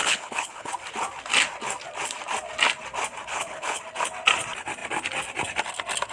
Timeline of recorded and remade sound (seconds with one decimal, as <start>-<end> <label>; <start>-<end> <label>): 0.0-0.7 remade; 0.7-3.3 recorded; 3.3-3.8 remade; 3.8-6.1 recorded